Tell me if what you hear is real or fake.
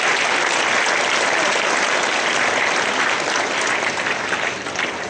real